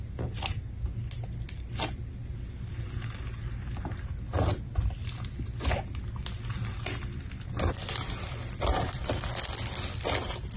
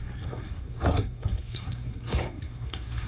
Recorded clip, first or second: first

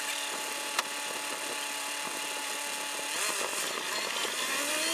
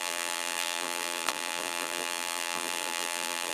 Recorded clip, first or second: first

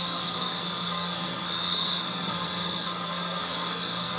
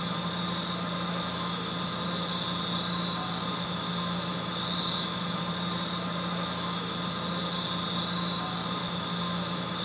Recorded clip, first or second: second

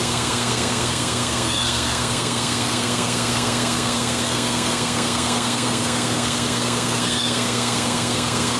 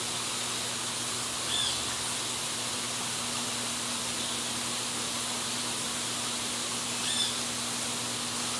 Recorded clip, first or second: second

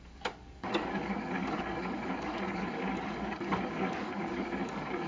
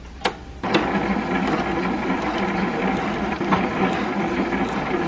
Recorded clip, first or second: second